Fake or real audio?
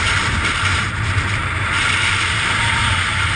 fake